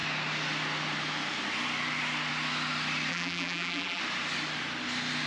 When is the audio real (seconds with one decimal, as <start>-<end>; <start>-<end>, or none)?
0.0-3.1; 4.0-5.3